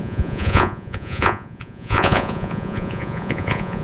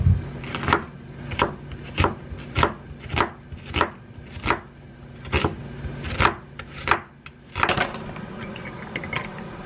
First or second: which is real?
second